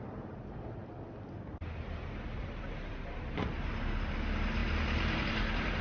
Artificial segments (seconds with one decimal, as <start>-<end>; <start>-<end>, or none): 4.6-5.8